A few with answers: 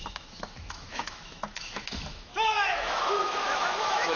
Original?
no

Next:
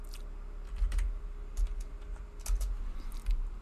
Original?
yes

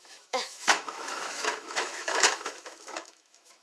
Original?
no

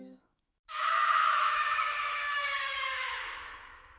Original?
no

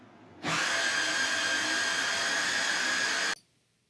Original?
yes